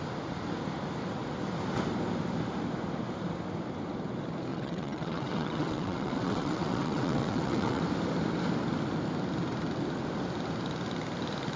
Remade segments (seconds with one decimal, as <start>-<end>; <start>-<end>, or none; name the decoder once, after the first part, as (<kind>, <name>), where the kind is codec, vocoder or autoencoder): 4.5-7.8 (vocoder, WaveNeXt)